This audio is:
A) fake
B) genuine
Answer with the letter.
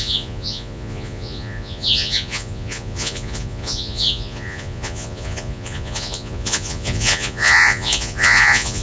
A